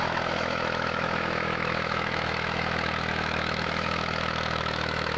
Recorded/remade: remade